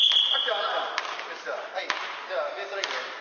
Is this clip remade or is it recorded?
recorded